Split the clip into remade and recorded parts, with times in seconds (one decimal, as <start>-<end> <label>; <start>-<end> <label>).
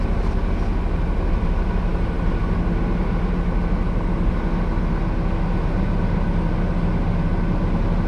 0.0-8.1 recorded